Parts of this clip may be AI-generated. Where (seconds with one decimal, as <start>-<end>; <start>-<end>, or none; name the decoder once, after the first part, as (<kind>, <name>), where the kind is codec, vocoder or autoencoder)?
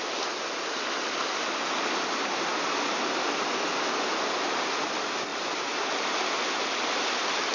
none